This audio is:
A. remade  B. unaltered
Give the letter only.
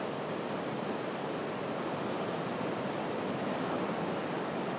B